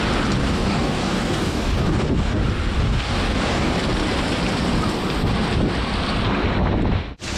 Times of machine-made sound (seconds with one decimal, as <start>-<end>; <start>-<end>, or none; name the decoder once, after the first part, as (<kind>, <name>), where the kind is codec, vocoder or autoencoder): 0.4-2.4 (codec, DAC); 2.8-3.7